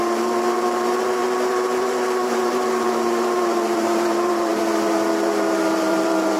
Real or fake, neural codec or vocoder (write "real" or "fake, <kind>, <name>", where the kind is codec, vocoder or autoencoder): fake, vocoder, BigVGAN v2